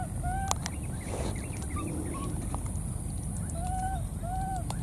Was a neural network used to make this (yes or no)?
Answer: yes